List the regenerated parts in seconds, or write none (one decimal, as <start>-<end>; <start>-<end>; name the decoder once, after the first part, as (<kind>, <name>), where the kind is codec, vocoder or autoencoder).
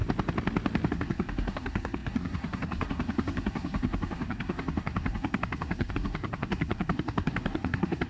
0.9-8.1 (codec, SNAC)